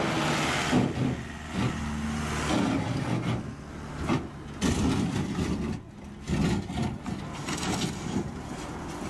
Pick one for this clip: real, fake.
real